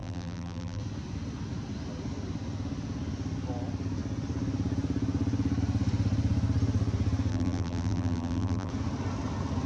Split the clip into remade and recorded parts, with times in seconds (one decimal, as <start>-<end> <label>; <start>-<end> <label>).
0.0-0.8 remade; 0.8-7.3 recorded; 7.3-8.7 remade; 8.7-9.7 recorded